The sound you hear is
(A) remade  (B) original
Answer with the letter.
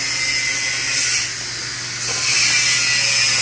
B